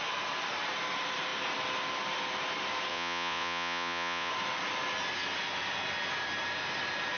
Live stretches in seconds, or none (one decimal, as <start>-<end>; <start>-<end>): 0.0-2.9; 4.3-7.2